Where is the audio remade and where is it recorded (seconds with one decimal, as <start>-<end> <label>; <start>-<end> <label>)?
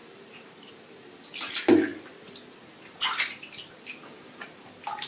0.0-5.1 recorded